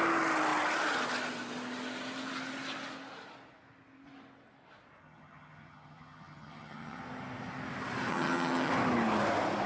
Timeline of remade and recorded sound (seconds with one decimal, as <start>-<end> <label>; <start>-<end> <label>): 0.0-5.0 recorded; 5.0-7.0 remade; 7.0-8.1 recorded; 8.1-8.7 remade; 8.7-9.7 recorded